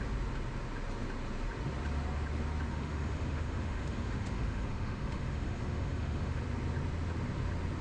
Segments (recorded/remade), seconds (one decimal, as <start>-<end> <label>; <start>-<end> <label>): 0.0-2.7 recorded; 2.7-6.4 remade; 6.4-7.8 recorded